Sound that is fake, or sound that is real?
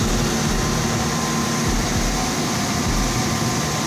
real